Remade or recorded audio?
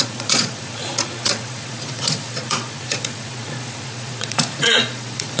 remade